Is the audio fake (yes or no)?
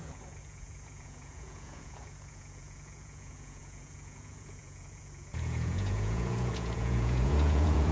yes